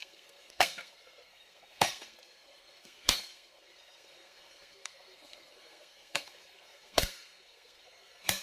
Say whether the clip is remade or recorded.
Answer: remade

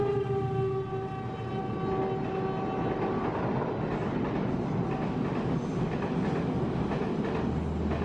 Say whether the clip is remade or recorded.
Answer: recorded